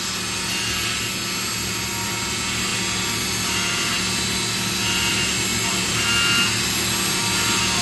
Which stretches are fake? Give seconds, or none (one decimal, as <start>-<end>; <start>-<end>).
none